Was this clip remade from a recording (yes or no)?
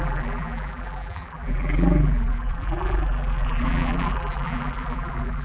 yes